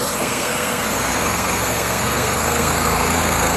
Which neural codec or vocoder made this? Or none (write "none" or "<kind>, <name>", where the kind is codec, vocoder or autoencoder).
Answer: codec, SNAC